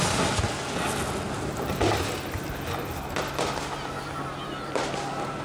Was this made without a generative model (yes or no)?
yes